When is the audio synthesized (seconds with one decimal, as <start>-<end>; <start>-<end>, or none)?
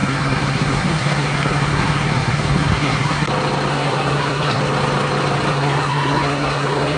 0.0-3.3; 3.7-4.6; 5.5-7.0